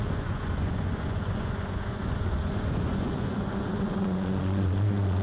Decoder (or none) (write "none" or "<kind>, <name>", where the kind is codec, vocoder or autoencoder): vocoder, Vocos